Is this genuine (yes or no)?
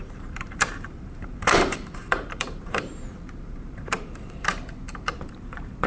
no